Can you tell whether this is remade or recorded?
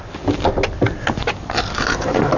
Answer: recorded